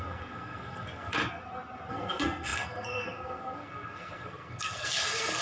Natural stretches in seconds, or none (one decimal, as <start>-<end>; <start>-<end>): 1.2-1.9